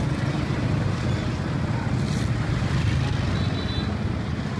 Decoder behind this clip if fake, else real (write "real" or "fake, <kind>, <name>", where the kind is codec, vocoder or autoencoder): real